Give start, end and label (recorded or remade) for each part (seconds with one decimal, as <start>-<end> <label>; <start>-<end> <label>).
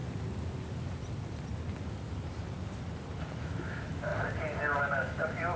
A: 0.0-3.4 recorded; 3.4-4.1 remade; 4.1-4.8 recorded; 4.8-5.6 remade